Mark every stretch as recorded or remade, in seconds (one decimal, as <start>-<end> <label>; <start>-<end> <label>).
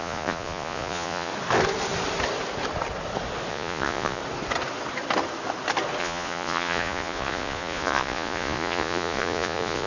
0.0-1.3 remade; 1.3-3.5 recorded; 3.5-4.2 remade; 4.2-6.0 recorded; 6.0-9.9 remade